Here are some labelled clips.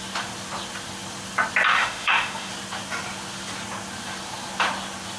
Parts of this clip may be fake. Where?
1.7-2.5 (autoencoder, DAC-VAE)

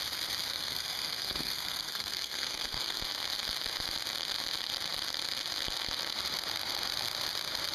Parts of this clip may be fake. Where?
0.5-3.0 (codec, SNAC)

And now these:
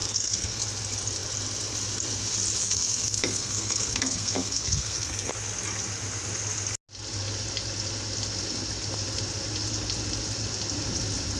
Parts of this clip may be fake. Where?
0.0-0.6 (codec, SNAC); 2.6-5.3

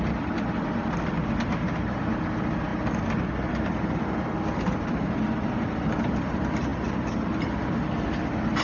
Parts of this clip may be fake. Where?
0.0-2.7 (vocoder, BigVGAN v2); 3.5-8.6

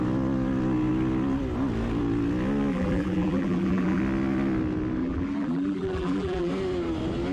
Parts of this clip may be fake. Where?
2.7-4.0 (vocoder, BigVGAN v2); 5.0-6.5

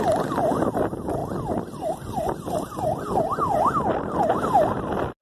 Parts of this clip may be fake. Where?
none

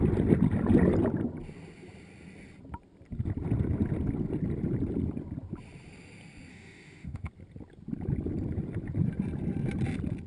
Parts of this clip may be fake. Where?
6.5-7.3 (autoencoder, DAC-VAE)